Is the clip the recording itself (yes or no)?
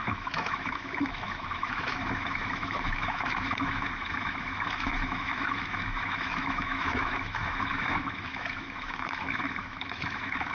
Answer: no